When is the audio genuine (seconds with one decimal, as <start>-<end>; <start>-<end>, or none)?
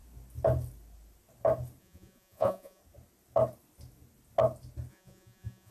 0.0-1.8; 2.8-4.9